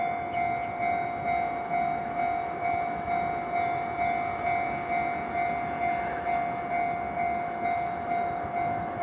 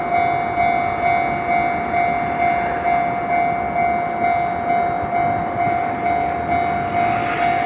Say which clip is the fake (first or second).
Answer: first